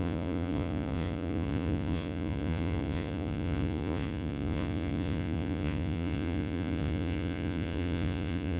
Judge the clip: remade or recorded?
remade